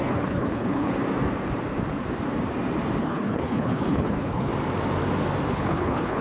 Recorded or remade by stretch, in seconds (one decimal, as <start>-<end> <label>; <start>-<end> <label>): 0.0-0.9 remade; 0.9-3.0 recorded; 3.0-4.5 remade; 4.5-5.5 recorded; 5.5-6.2 remade